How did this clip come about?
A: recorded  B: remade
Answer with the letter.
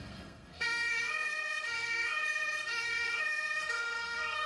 B